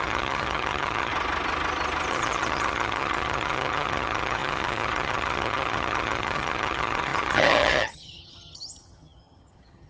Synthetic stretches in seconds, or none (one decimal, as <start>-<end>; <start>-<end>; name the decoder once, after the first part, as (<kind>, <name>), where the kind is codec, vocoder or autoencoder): 0.0-1.1 (vocoder, HiFi-GAN); 2.1-9.9